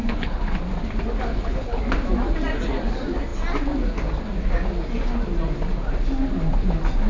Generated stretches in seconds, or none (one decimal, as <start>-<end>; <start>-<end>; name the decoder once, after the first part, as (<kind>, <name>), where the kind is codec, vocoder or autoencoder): 0.0-0.6 (codec, HILCodec); 1.3-1.8